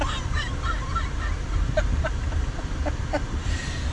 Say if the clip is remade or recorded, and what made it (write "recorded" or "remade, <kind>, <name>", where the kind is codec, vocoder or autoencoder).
recorded